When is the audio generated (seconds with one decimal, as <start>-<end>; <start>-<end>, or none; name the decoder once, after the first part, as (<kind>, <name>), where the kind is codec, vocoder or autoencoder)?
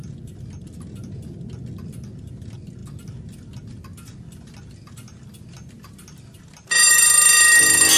none